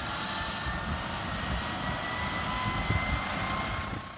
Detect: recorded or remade recorded